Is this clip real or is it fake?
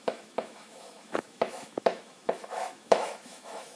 fake